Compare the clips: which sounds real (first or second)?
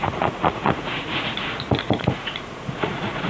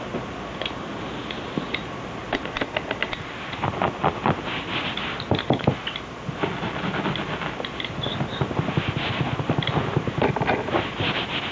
second